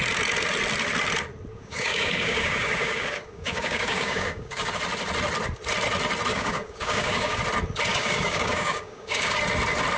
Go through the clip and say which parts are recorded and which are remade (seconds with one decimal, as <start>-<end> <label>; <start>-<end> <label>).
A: 0.0-1.5 recorded; 1.5-4.7 remade; 4.7-6.3 recorded; 6.3-7.4 remade; 7.4-7.9 recorded; 7.9-9.4 remade; 9.4-10.0 recorded